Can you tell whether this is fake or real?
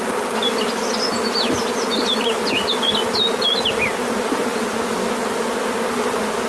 real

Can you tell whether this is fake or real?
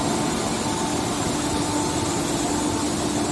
real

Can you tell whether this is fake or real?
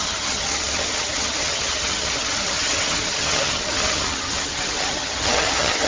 fake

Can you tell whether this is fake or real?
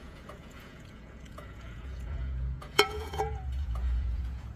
fake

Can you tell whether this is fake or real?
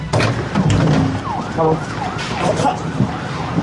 real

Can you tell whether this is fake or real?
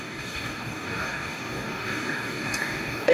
fake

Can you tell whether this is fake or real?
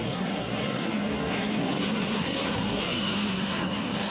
fake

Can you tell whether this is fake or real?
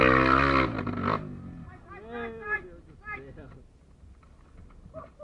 real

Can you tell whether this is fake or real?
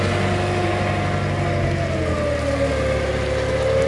real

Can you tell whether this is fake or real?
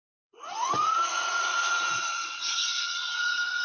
fake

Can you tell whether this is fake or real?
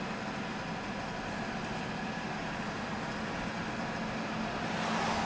real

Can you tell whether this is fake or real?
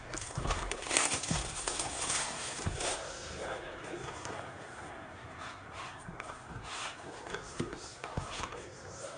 fake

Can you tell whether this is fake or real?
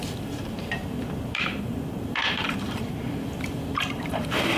fake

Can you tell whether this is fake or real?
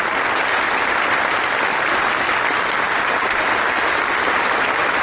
real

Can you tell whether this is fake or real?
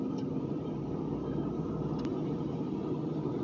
real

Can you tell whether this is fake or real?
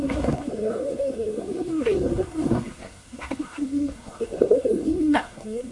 fake